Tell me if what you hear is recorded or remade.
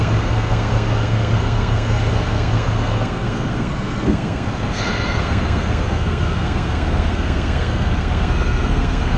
remade